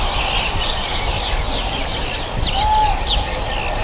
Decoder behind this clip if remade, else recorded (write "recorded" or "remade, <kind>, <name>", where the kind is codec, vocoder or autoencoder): recorded